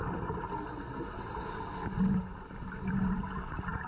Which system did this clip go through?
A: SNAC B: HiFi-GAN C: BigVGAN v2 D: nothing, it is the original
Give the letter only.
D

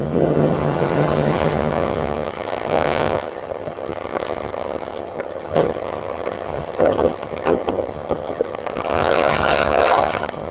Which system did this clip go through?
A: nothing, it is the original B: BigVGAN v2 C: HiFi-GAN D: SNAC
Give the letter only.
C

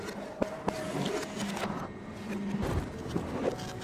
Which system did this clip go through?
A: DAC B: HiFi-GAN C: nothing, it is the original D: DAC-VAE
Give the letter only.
C